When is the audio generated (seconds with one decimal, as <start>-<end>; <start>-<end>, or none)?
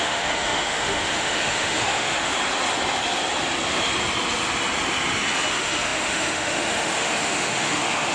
0.0-2.3; 5.5-8.1